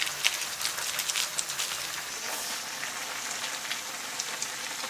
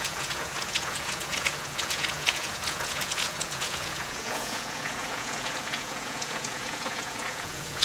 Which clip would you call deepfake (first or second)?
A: second